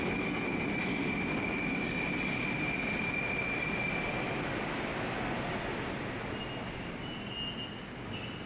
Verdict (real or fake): real